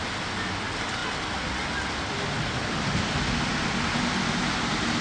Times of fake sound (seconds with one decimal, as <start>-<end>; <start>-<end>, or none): none